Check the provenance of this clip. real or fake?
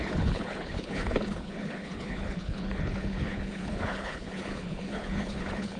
fake